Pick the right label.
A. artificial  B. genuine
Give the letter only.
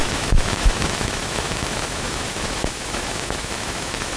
A